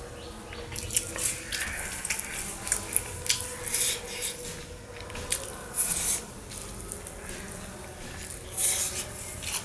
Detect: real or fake real